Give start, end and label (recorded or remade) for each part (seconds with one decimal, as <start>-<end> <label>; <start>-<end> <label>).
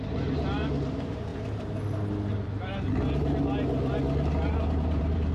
0.0-1.3 remade; 1.3-4.5 recorded; 4.5-5.3 remade